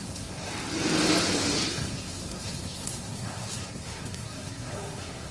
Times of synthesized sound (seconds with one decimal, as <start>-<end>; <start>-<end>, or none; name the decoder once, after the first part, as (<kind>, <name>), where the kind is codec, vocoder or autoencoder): 0.0-0.5 (codec, SNAC); 1.7-5.3